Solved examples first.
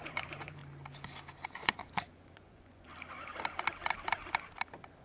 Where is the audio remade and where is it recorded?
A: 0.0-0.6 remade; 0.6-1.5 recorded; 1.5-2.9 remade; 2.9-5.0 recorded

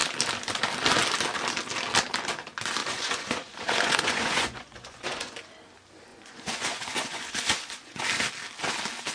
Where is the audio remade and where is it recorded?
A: 0.0-2.8 recorded; 2.8-5.3 remade; 5.3-6.1 recorded; 6.1-8.0 remade; 8.0-9.1 recorded